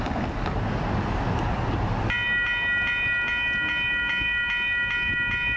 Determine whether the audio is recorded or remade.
recorded